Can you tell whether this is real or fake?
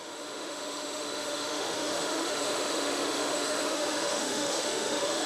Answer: fake